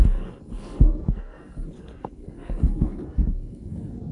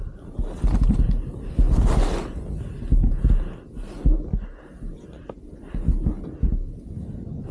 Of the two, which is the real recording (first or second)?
second